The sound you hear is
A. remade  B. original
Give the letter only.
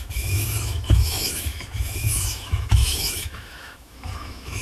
A